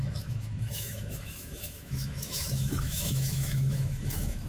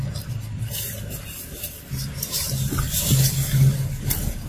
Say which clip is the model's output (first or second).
first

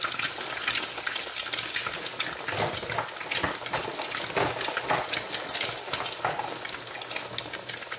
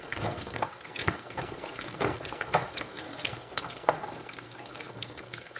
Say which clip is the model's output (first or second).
second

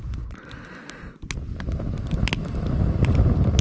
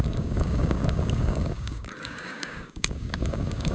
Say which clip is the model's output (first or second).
second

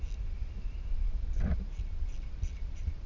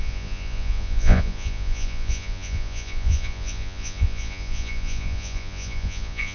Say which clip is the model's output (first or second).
second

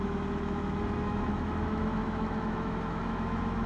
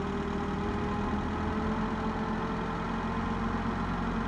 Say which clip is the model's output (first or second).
first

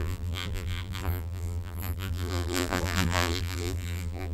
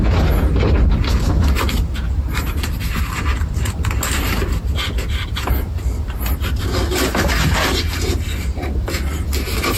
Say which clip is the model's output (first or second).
first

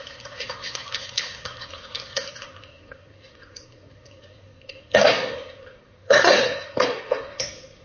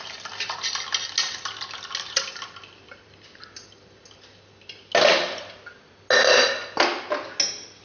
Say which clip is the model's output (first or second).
first